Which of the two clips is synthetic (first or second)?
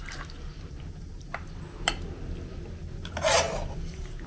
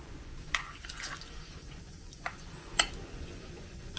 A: second